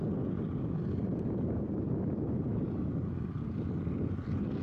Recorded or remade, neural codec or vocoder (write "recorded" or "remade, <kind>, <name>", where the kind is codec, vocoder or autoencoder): recorded